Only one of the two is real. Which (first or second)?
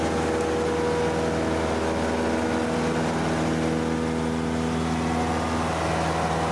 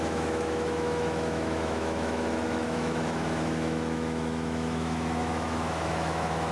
first